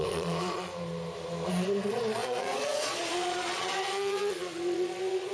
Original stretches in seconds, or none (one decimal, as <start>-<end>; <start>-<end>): 0.7-1.5